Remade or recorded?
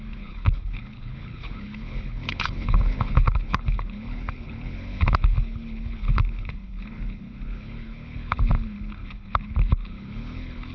remade